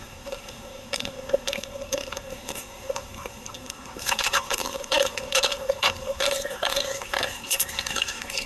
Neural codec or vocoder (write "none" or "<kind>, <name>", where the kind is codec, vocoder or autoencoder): codec, SNAC